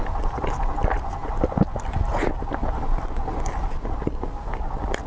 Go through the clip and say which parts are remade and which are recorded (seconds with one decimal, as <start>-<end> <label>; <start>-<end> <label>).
0.0-5.1 recorded